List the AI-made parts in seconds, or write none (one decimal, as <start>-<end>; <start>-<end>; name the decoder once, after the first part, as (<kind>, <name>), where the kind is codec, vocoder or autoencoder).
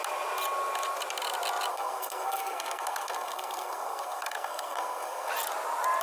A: 1.7-5.3 (codec, SNAC)